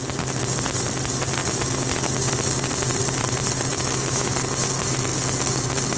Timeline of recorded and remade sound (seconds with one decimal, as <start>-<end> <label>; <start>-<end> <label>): 0.0-3.7 recorded; 3.7-4.4 remade; 4.4-6.0 recorded